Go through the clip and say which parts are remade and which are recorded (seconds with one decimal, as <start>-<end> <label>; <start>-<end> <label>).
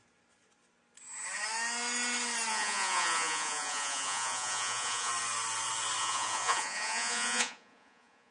0.0-2.5 recorded; 2.5-5.1 remade; 5.1-6.0 recorded; 6.0-8.3 remade